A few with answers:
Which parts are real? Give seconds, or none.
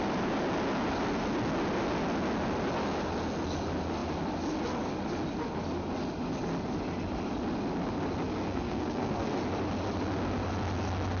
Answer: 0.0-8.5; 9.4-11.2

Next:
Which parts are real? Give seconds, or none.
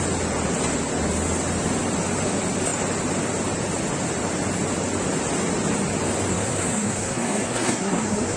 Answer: 0.0-6.3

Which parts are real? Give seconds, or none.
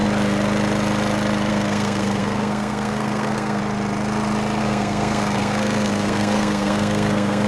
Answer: 0.0-1.5; 3.6-4.6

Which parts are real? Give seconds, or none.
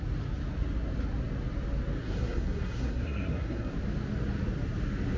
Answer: 0.0-2.0; 3.7-5.2